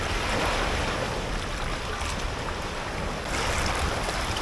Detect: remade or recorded recorded